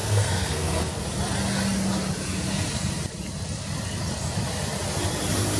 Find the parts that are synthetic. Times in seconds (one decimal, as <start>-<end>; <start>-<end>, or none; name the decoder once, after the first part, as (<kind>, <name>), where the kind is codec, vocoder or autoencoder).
0.0-1.0 (codec, SNAC)